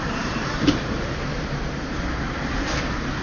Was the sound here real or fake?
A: fake